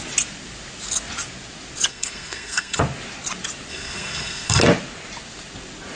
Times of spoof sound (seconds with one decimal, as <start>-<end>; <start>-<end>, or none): 1.9-2.8; 3.7-4.6